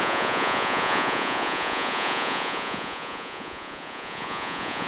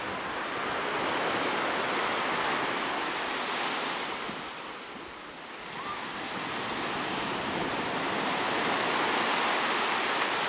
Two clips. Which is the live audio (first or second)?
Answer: second